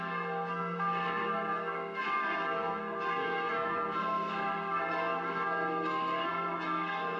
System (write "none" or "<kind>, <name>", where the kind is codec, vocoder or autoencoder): codec, SNAC